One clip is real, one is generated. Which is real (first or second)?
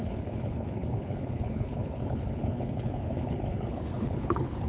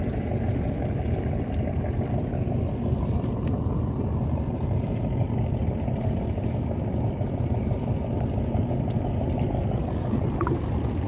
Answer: second